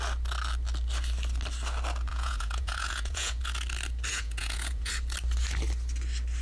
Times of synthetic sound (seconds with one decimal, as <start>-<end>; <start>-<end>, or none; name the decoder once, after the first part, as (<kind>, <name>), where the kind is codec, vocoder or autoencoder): 2.1-3.4 (vocoder, Vocos); 4.1-4.9